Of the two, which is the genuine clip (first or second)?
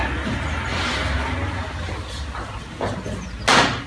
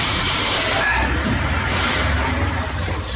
first